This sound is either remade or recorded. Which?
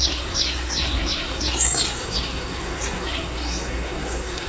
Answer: remade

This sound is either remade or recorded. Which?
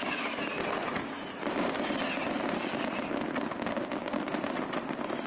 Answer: recorded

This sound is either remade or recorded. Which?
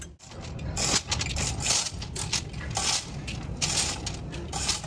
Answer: recorded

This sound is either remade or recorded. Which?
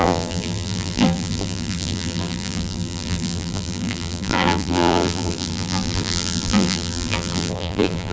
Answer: remade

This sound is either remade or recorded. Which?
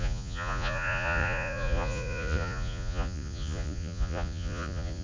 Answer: remade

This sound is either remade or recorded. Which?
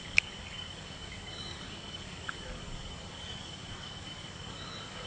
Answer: remade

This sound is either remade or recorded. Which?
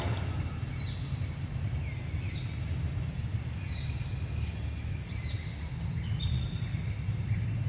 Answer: recorded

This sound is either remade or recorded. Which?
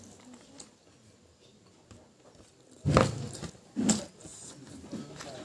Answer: recorded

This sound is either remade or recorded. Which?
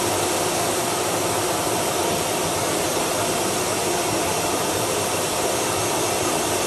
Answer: recorded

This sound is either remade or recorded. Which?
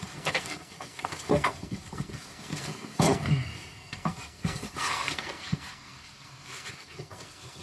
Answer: remade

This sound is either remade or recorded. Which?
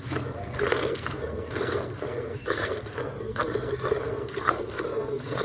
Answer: remade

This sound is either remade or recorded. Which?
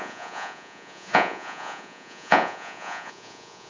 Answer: remade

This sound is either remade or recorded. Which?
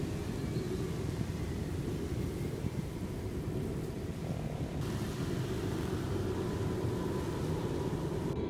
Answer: recorded